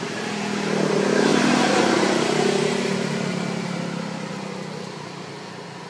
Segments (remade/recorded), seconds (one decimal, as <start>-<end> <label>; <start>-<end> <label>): 0.0-5.9 recorded